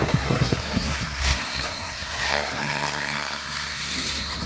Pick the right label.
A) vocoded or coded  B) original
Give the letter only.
A